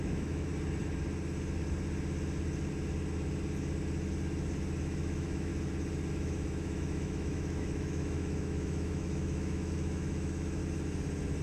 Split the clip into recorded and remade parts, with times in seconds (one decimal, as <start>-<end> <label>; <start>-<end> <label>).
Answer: 0.0-0.5 remade; 0.5-4.8 recorded; 4.8-5.5 remade; 5.5-6.1 recorded; 6.1-10.6 remade; 10.6-11.4 recorded